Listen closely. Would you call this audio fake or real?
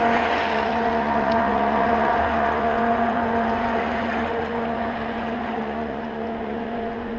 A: fake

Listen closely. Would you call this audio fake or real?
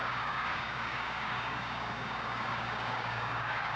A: fake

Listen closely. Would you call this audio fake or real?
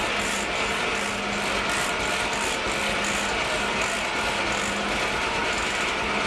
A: real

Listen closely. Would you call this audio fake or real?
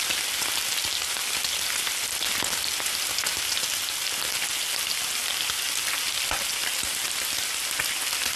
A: real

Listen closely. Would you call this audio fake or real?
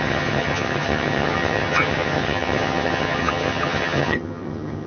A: fake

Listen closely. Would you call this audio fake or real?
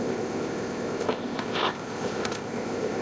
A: fake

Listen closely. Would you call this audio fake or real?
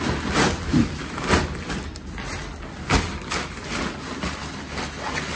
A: real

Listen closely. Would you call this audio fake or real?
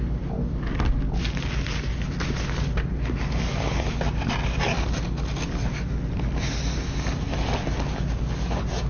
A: real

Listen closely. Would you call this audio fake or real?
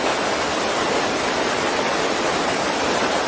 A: real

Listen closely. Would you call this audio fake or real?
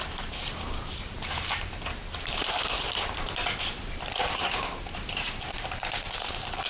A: fake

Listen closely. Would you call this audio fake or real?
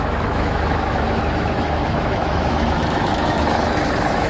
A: fake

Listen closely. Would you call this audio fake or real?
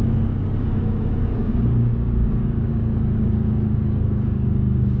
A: fake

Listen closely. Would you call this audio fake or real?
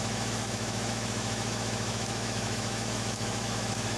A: fake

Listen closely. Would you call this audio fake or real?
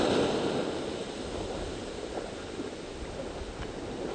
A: real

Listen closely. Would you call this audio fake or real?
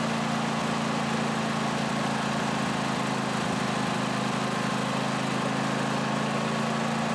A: real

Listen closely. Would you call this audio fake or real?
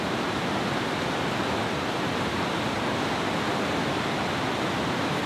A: real